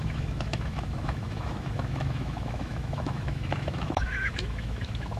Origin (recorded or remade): remade